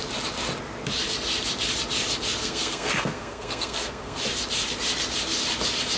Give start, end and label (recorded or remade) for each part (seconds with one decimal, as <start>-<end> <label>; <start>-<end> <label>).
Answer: 0.0-2.4 recorded; 2.4-4.2 remade; 4.2-6.0 recorded